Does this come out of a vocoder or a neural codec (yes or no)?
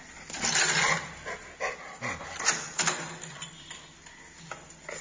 no